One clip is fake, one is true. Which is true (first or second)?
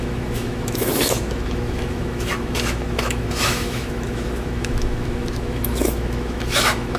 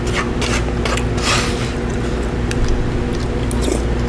second